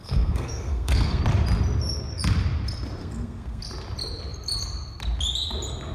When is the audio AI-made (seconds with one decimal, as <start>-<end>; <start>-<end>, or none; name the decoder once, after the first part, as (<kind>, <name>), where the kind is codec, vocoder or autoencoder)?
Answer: 0.0-1.2 (codec, SNAC); 3.0-3.6